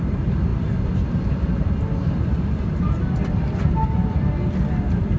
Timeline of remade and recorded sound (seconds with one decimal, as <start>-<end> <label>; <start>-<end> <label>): 0.0-5.2 recorded